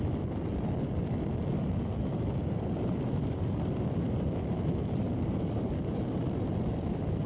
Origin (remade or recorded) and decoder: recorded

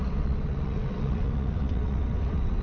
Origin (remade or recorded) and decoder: remade, vocoder, WaveNeXt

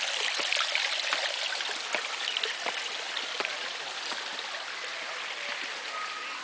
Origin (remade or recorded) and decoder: recorded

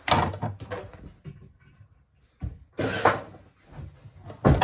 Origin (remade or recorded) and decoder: recorded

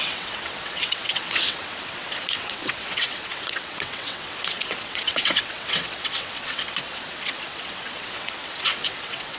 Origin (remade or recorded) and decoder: remade, vocoder, WaveNeXt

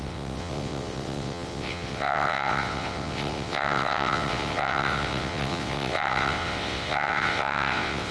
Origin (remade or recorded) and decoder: remade, vocoder, WaveNeXt